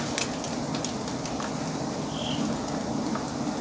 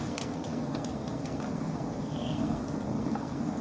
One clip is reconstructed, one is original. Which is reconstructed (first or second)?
second